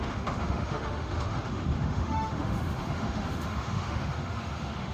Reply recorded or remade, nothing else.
remade